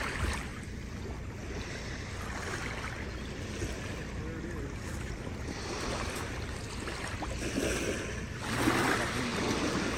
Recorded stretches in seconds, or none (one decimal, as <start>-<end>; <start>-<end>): 0.0-10.0